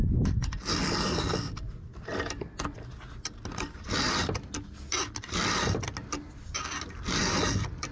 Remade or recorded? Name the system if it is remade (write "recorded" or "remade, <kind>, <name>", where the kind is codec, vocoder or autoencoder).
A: recorded